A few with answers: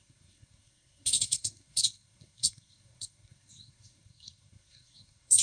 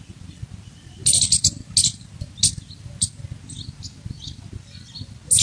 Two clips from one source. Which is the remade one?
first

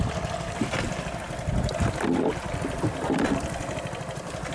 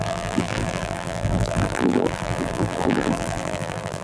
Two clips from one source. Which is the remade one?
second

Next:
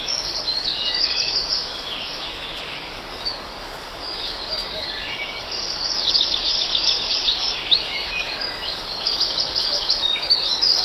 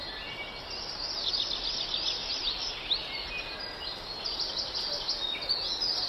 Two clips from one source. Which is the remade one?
first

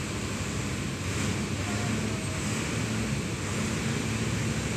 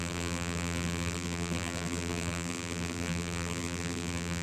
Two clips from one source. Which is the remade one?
second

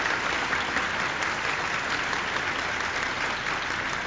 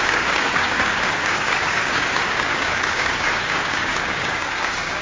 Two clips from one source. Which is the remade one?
second